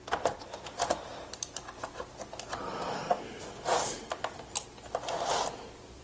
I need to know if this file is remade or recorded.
recorded